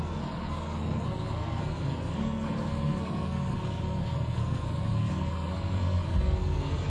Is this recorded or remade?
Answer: remade